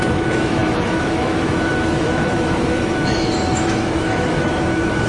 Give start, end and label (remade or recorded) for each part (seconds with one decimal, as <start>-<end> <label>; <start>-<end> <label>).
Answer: 0.0-5.1 remade